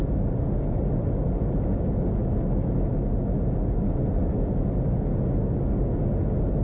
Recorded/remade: recorded